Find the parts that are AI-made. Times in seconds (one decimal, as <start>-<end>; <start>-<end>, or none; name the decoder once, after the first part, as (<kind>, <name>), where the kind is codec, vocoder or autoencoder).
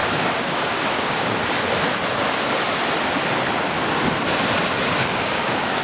0.0-1.4 (codec, DAC); 4.9-5.8